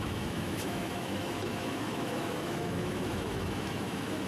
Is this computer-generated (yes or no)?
yes